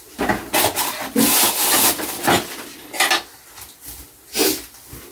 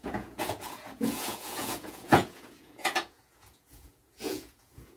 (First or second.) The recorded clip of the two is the first